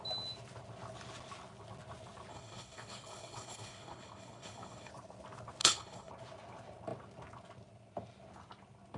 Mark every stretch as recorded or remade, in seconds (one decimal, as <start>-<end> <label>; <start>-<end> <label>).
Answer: 0.0-2.3 recorded; 2.3-4.9 remade; 4.9-5.6 recorded; 5.6-6.1 remade; 6.1-9.0 recorded